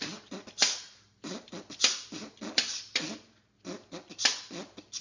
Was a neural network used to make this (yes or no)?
no